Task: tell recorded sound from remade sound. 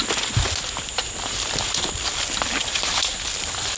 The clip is recorded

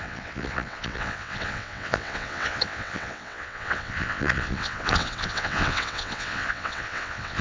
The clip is remade